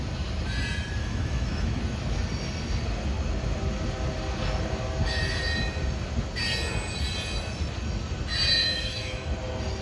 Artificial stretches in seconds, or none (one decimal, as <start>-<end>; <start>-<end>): 1.0-1.8; 8.6-9.3